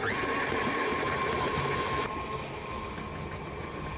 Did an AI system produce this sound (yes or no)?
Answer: no